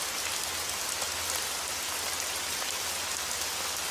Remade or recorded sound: recorded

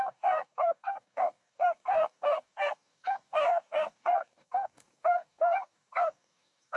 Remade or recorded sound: remade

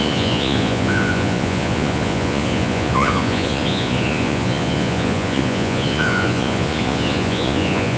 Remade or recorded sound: remade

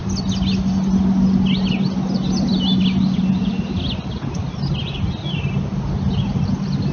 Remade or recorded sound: recorded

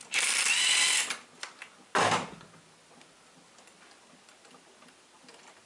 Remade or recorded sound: remade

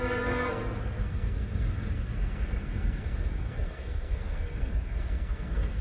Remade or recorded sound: remade